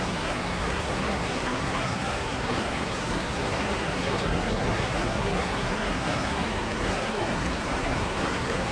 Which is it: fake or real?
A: fake